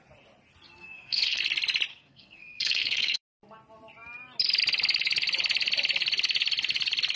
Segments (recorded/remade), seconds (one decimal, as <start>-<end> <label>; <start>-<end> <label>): 0.0-0.8 recorded; 0.8-1.4 remade; 1.4-1.9 recorded; 1.9-3.2 remade; 3.2-7.2 recorded